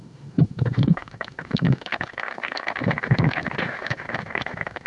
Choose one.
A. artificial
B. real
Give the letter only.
A